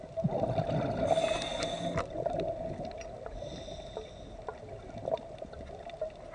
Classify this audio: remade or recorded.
recorded